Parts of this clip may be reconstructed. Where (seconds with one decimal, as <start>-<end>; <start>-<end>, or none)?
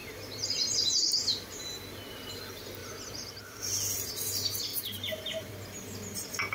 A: 0.0-2.4; 2.8-3.4; 4.7-5.5